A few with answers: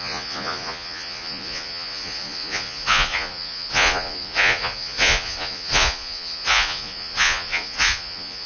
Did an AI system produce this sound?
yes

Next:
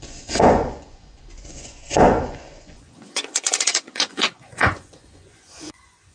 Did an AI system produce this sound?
yes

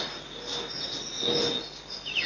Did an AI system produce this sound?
no